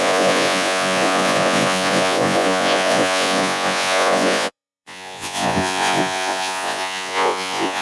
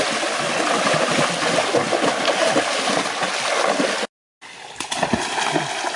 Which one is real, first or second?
second